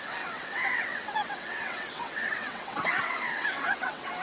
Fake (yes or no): yes